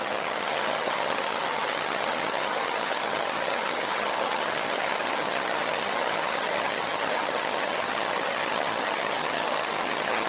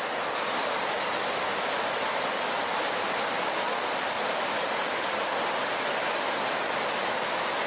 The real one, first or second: second